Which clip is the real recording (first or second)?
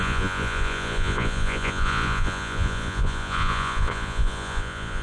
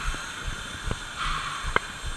second